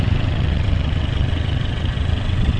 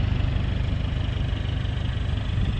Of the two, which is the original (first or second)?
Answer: second